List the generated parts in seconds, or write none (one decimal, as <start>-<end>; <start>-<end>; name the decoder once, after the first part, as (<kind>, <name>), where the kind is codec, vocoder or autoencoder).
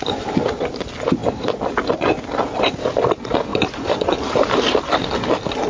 3.5-4.2 (vocoder, Vocos)